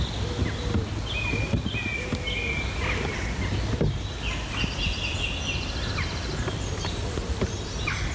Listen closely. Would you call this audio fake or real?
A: real